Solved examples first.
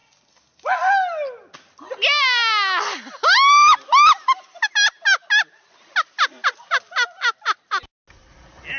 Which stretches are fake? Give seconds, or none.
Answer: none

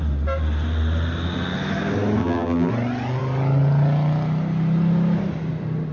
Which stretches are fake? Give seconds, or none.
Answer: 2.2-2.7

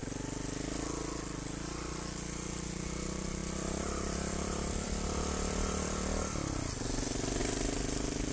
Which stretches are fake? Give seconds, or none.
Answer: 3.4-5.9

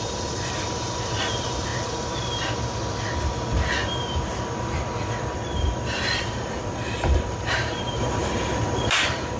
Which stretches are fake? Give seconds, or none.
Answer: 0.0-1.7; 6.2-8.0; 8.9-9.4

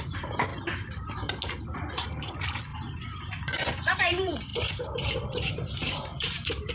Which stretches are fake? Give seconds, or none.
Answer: 0.0-0.5; 1.6-2.7; 3.3-6.7